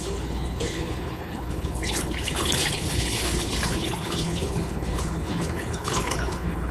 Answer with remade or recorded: remade